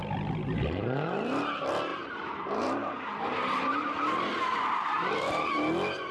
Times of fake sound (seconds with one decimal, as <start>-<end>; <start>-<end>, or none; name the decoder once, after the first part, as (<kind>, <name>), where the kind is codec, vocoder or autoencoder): 0.0-1.4 (vocoder, BigVGAN v2); 1.9-5.5